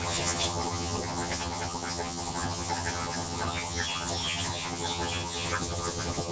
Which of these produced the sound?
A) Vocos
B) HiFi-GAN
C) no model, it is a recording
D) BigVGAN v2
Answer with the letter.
B